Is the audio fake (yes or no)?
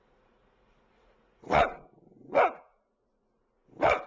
yes